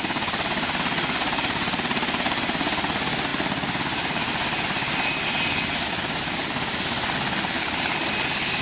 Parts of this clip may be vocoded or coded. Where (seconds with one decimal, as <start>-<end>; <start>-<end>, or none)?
none